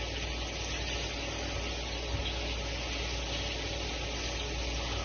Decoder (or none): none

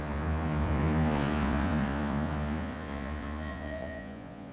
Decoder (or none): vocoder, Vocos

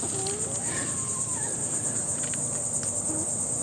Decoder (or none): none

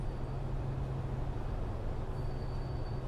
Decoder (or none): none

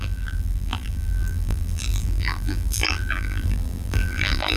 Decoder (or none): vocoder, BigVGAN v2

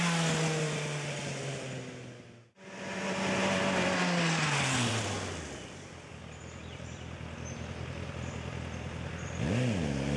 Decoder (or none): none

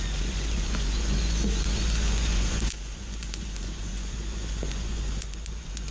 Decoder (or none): vocoder, Vocos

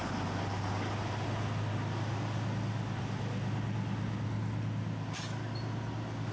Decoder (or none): none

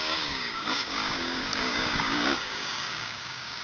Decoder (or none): codec, DAC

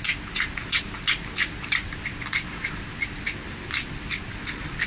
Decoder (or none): none